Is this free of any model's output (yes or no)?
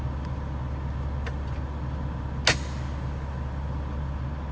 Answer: yes